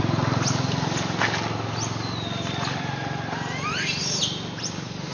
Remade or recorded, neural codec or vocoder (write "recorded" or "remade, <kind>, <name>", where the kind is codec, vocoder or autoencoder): recorded